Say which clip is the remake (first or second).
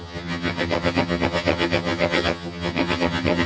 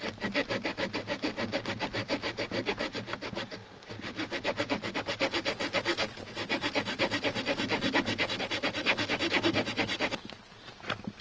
first